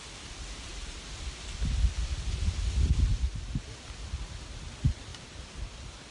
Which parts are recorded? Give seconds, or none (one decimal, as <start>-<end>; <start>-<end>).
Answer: 0.0-6.1